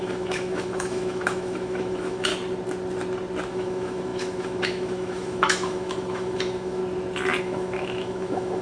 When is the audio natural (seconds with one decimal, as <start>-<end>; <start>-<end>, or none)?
2.3-3.5; 6.8-7.4